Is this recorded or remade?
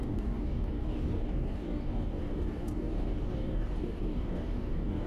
remade